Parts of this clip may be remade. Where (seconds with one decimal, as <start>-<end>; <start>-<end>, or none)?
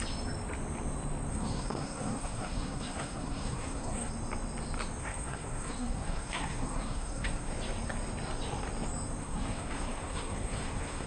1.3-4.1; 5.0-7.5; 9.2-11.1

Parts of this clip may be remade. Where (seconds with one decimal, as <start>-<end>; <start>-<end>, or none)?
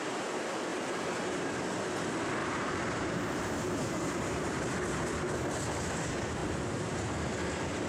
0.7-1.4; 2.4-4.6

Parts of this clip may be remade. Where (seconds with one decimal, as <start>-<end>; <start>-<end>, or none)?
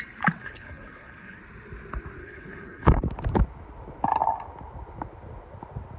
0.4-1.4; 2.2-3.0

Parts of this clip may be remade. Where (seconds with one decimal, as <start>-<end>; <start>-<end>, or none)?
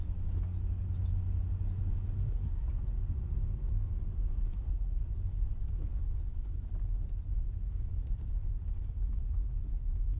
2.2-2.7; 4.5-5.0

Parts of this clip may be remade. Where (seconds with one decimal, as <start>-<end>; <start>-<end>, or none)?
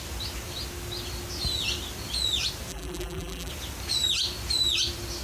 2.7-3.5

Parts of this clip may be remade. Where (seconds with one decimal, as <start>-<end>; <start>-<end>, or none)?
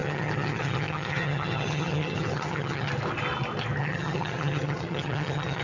0.0-2.9; 3.8-5.6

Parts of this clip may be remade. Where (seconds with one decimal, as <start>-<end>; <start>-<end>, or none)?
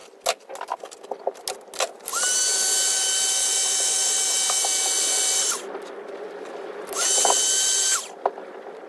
none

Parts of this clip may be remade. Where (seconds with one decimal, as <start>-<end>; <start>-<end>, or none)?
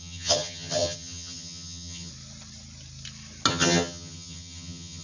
0.0-2.1; 3.5-5.0